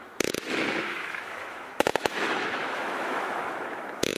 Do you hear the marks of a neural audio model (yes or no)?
yes